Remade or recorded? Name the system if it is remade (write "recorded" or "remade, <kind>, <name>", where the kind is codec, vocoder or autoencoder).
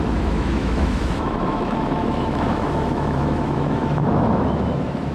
remade, autoencoder, DAC-VAE